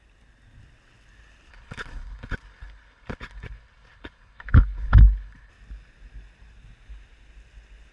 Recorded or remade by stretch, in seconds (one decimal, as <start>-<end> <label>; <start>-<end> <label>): 0.0-1.5 recorded; 1.5-5.5 remade; 5.5-7.9 recorded